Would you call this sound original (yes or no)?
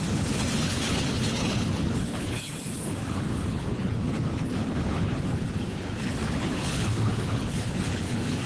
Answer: no